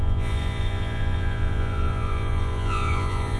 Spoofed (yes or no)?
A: yes